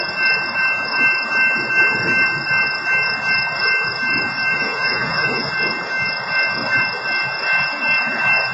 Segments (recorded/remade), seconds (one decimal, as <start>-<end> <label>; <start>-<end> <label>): 0.0-4.5 recorded; 4.5-5.5 remade; 5.5-8.5 recorded